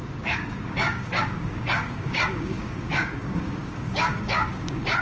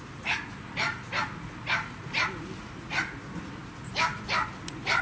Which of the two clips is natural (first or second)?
second